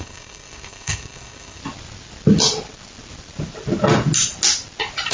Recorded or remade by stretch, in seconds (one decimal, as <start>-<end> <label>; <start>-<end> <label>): 0.0-1.6 remade; 1.6-5.1 recorded